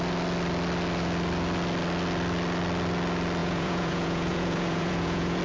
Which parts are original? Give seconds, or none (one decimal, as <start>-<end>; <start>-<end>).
0.0-3.4